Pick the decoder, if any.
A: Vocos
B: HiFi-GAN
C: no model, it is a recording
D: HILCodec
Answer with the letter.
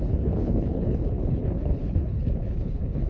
D